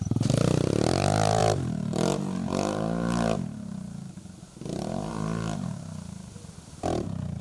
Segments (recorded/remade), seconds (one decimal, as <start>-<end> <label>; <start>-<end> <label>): 0.0-7.4 recorded